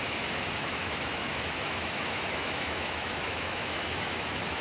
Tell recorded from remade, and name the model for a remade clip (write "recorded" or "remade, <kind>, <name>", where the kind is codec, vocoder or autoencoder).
remade, autoencoder, DAC-VAE